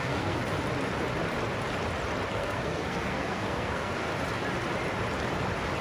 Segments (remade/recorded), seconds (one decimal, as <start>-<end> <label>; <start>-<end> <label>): 0.0-0.4 remade; 0.4-2.3 recorded; 2.3-4.1 remade; 4.1-5.8 recorded